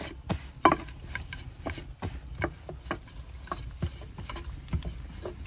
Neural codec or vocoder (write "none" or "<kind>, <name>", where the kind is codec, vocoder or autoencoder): none